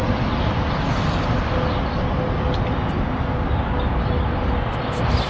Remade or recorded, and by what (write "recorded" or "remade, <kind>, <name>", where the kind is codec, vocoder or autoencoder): recorded